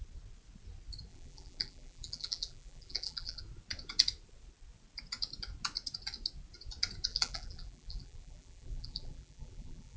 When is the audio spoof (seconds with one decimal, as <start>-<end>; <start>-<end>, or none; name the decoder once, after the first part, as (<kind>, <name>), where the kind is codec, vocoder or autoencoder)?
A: 1.1-3.4 (vocoder, BigVGAN v2); 7.1-10.0